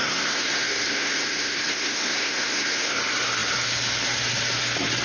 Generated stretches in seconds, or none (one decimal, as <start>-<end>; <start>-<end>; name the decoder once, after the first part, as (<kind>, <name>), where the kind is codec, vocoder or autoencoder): 0.0-3.0 (codec, SNAC)